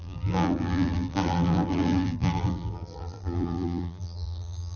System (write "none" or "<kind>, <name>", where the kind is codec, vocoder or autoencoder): vocoder, BigVGAN v2